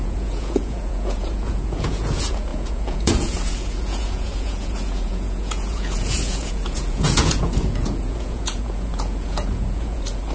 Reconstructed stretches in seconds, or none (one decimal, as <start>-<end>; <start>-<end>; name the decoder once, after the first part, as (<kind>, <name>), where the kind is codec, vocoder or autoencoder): 0.0-10.3 (vocoder, Vocos)